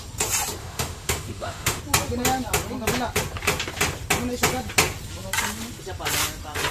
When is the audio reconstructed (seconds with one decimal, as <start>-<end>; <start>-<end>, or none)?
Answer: 0.6-1.8